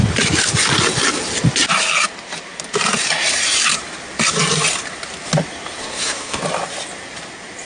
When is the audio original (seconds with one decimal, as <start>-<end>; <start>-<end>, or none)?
0.0-5.8; 6.4-7.7